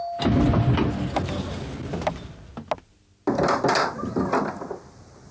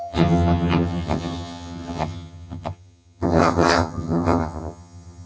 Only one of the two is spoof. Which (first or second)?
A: second